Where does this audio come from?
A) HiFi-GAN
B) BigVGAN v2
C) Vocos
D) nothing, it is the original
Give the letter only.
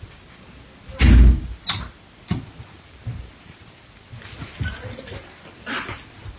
D